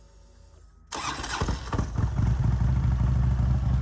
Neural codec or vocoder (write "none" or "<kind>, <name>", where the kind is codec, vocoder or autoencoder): none